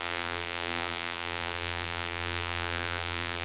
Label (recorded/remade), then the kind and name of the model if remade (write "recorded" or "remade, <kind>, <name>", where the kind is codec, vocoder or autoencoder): remade, vocoder, BigVGAN v2